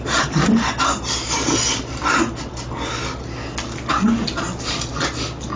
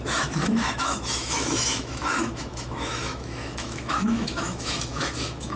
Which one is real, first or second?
first